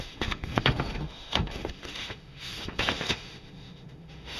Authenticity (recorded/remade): remade